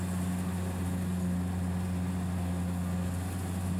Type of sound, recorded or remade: recorded